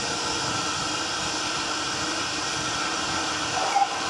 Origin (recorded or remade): recorded